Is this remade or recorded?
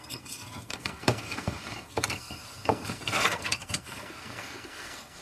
remade